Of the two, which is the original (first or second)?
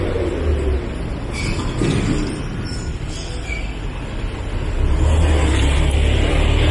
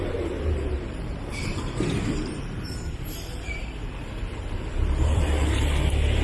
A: first